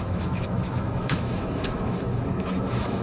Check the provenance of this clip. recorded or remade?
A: remade